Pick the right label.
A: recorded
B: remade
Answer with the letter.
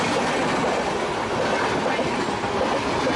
A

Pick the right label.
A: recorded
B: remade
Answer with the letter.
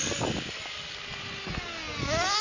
A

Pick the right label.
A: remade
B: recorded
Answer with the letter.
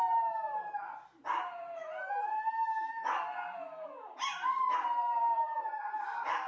B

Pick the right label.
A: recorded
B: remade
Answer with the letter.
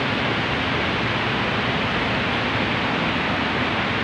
A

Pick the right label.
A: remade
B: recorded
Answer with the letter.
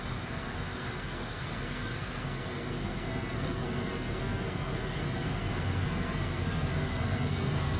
A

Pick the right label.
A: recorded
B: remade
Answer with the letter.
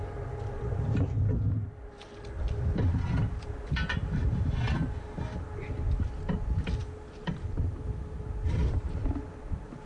A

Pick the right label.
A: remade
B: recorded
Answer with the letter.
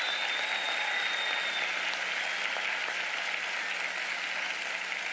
B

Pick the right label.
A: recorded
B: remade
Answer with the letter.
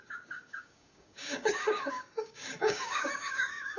B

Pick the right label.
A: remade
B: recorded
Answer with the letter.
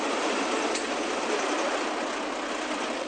B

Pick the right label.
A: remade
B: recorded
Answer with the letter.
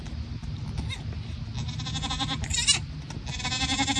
B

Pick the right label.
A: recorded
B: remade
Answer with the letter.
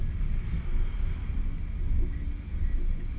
A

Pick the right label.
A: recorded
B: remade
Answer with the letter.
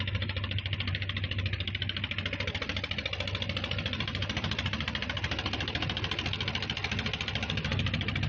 A